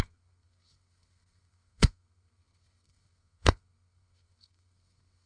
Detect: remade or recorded remade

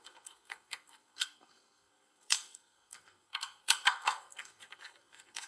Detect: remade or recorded remade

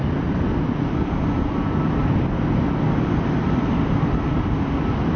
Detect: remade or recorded recorded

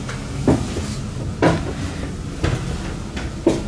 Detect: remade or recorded recorded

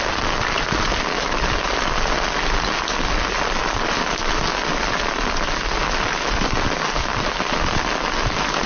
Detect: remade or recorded recorded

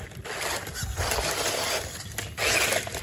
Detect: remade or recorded recorded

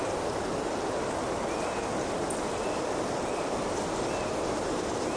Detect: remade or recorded recorded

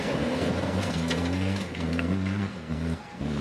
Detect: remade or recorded remade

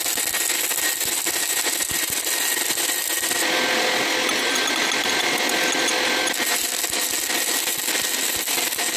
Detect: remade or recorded recorded